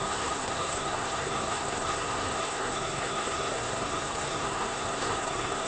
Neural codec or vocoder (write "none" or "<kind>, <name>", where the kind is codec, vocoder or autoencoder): codec, SNAC